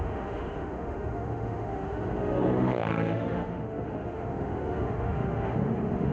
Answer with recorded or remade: remade